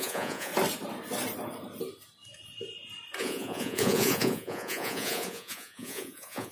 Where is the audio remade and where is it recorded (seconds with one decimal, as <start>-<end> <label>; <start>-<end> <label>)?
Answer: 0.0-0.5 remade; 0.5-3.2 recorded; 3.2-6.5 remade